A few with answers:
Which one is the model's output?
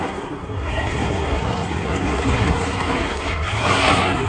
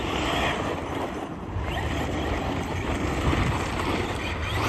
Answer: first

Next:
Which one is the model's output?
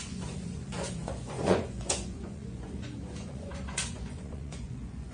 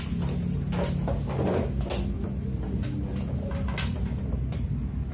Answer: first